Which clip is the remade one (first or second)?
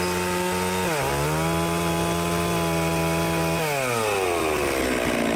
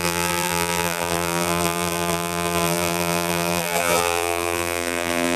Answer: second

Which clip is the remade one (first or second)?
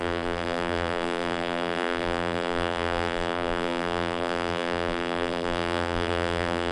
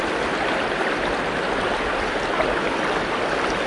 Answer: first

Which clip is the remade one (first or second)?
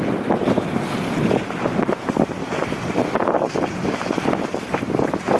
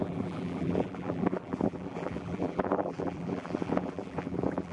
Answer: second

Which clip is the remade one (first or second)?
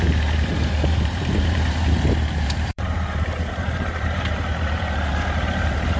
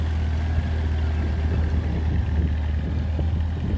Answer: first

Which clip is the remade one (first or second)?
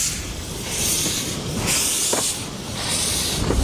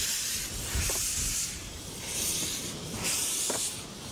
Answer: second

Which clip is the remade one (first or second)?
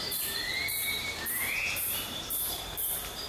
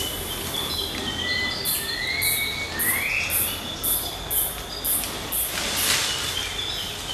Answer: first